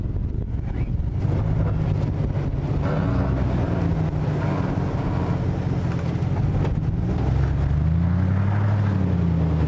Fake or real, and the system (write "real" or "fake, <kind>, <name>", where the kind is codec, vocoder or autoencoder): real